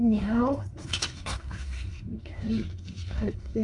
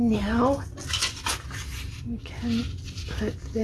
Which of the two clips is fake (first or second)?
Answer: first